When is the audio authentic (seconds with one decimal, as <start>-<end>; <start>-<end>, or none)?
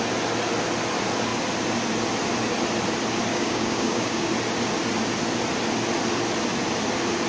0.0-3.3; 4.3-7.3